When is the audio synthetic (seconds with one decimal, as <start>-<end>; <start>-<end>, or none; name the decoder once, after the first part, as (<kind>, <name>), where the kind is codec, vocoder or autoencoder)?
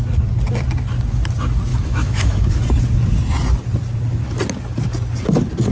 1.7-2.5 (autoencoder, DAC-VAE)